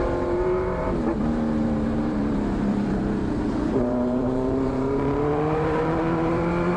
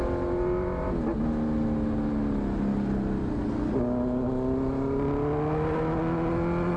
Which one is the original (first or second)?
second